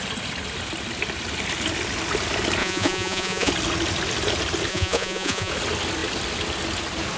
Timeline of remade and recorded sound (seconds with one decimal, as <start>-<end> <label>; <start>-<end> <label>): 0.0-2.6 recorded; 2.6-3.5 remade; 3.5-4.7 recorded; 4.7-5.5 remade; 5.5-7.2 recorded